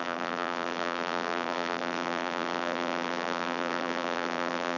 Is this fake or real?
fake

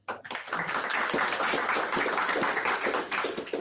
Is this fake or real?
real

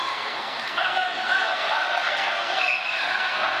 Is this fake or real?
fake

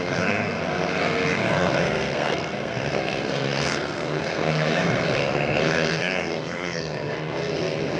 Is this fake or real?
fake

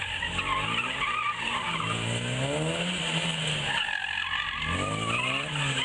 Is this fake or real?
real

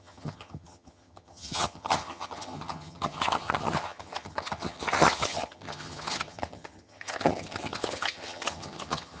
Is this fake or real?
fake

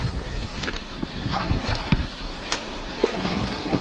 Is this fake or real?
fake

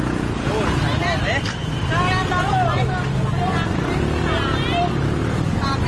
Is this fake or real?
real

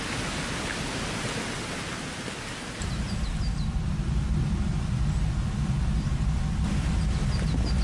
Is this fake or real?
real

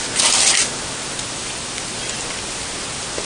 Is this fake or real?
real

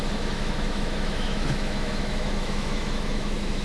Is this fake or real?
fake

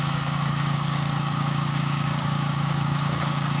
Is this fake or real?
fake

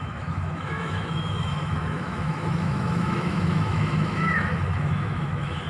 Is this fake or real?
fake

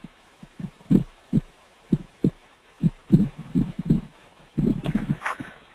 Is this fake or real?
fake